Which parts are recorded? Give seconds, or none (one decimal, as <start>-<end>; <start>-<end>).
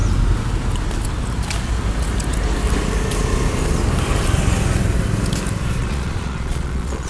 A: 0.0-5.8